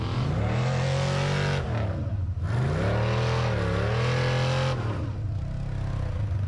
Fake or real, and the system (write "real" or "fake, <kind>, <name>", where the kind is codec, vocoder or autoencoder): real